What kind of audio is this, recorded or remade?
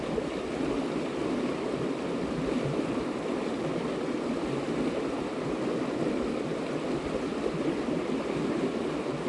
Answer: recorded